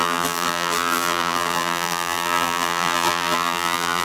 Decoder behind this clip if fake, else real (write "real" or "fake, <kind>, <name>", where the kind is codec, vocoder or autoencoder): fake, vocoder, BigVGAN v2